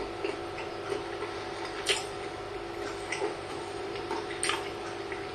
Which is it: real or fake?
real